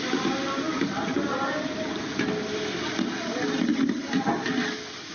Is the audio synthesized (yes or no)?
no